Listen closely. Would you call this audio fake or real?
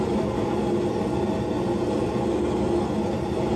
real